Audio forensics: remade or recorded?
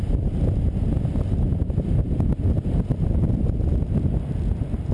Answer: recorded